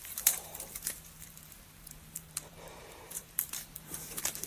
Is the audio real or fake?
fake